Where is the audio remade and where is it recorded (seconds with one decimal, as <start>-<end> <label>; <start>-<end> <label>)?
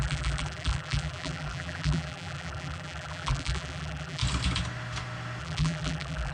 0.0-4.2 remade; 4.2-5.4 recorded; 5.4-6.3 remade